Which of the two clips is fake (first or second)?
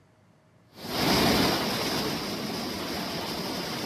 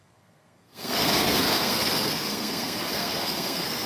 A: second